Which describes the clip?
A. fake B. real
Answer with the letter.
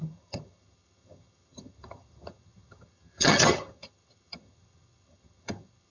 A